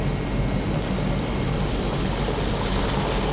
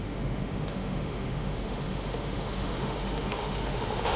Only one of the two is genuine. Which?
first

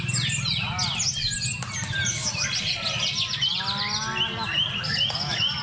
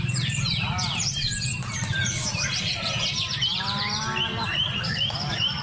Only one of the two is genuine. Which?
first